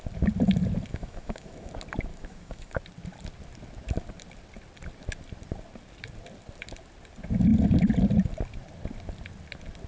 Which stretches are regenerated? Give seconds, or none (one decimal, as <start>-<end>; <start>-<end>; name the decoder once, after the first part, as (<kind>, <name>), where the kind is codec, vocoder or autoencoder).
0.9-1.7 (autoencoder, DAC-VAE); 2.1-2.7